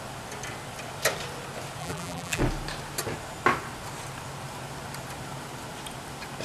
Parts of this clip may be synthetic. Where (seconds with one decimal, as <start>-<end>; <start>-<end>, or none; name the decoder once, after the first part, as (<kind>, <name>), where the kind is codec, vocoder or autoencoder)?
1.8-2.4 (vocoder, BigVGAN v2)